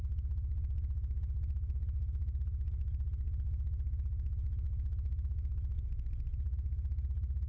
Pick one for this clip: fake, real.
real